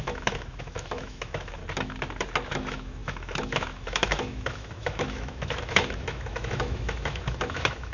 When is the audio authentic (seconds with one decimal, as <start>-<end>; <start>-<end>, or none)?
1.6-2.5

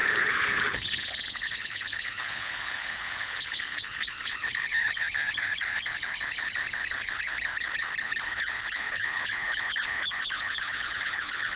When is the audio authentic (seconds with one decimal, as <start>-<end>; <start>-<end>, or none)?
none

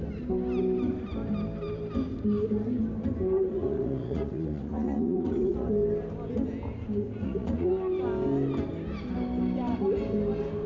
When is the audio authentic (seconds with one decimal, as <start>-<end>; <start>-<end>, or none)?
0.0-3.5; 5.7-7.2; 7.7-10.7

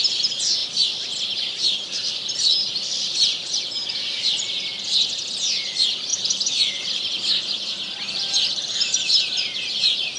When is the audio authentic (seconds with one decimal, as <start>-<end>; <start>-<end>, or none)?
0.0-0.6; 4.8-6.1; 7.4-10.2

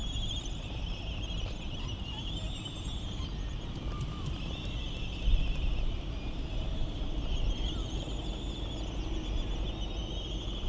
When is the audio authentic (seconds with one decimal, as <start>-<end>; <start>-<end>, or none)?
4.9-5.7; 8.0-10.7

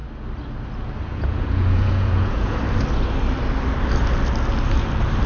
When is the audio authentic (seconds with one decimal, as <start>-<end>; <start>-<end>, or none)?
0.0-1.1; 2.6-5.3

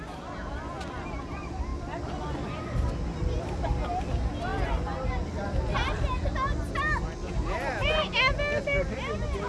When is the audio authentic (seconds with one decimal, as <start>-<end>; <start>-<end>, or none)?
0.0-9.5